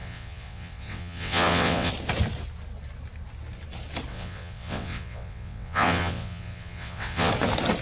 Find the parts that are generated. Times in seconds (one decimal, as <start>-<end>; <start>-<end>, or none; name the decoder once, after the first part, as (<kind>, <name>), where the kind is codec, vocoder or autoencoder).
0.0-1.9 (vocoder, WaveNeXt); 4.1-7.3